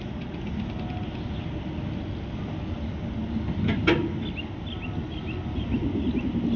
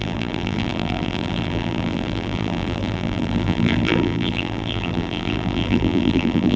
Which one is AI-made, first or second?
second